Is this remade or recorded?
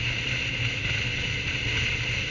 recorded